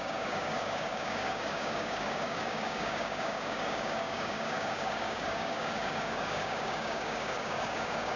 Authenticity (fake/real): fake